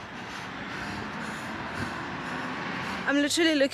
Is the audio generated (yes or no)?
no